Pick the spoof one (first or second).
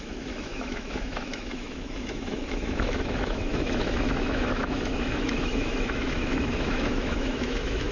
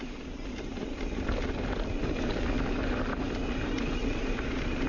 first